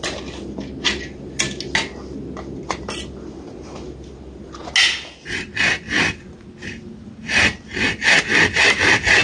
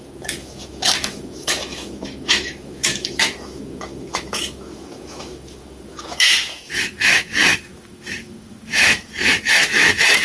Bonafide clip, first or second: first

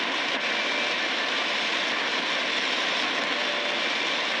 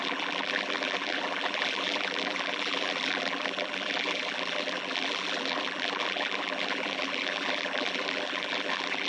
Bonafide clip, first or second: first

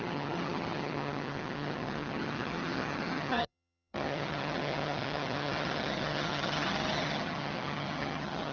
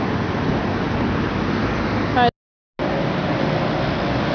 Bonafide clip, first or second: second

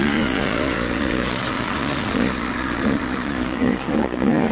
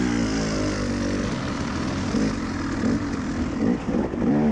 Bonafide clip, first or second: second